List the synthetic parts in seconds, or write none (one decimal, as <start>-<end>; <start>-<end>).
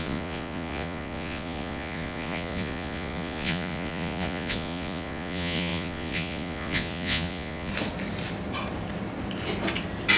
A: 0.0-7.7